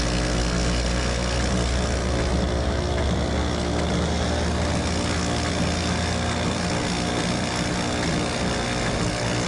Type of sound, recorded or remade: recorded